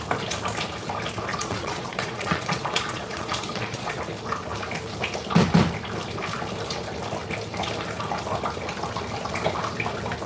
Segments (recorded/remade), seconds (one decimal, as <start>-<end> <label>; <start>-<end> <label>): 0.0-1.3 recorded; 1.3-4.0 remade; 4.0-10.3 recorded